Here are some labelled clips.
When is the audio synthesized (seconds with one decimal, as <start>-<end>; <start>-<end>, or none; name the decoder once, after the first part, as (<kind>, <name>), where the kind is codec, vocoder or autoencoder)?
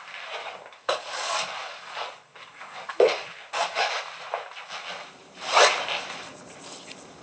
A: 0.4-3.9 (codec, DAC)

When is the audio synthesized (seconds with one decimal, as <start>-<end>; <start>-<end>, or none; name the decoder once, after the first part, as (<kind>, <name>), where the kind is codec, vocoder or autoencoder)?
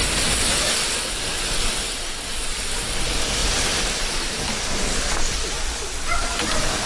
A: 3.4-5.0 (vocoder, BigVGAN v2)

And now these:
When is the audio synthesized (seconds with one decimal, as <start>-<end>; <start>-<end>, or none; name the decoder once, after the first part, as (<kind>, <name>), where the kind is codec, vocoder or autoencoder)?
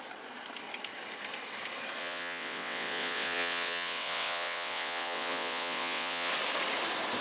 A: 2.0-6.3 (vocoder, WaveNeXt)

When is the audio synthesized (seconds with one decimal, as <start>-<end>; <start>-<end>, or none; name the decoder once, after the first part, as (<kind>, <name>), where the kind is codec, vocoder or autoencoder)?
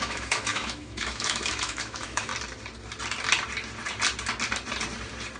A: 0.0-2.3 (autoencoder, DAC-VAE)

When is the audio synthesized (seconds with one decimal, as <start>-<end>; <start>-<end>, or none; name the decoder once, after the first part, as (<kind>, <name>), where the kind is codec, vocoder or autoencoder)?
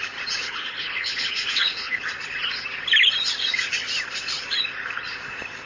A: 0.4-2.0 (codec, HILCodec)